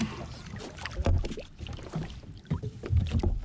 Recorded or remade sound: recorded